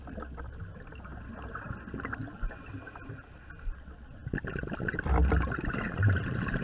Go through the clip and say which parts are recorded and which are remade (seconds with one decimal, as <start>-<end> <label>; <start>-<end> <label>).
0.0-6.6 recorded